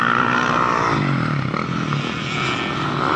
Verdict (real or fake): real